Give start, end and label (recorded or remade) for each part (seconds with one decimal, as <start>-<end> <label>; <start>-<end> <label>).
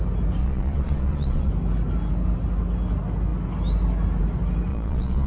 0.0-0.4 recorded; 0.4-1.5 remade; 1.5-4.7 recorded; 4.7-5.3 remade